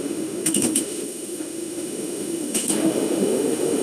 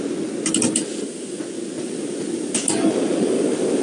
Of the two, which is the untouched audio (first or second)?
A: second